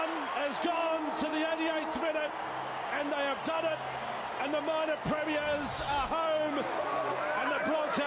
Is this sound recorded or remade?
recorded